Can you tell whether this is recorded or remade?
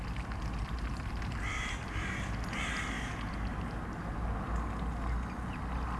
recorded